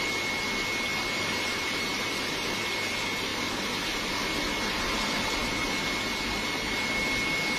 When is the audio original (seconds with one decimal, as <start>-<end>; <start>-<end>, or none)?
0.0-0.9; 2.6-7.6